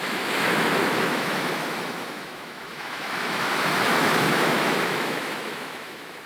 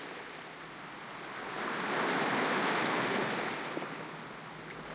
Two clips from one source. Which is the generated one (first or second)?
first